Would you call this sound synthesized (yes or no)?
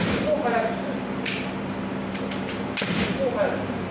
yes